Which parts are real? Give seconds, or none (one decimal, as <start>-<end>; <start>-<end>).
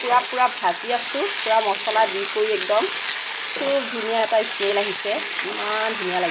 0.0-6.3